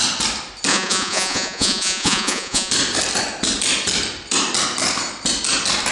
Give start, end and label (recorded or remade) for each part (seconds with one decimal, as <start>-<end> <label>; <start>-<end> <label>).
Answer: 0.0-0.7 recorded; 0.7-2.7 remade; 2.7-5.9 recorded